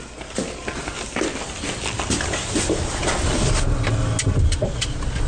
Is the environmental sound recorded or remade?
recorded